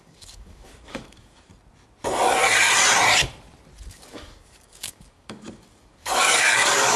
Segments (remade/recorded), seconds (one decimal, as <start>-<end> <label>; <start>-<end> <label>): 0.0-1.5 remade; 1.5-3.9 recorded; 3.9-7.0 remade